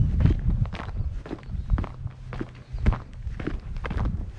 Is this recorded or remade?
recorded